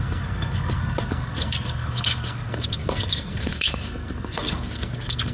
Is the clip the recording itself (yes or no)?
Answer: no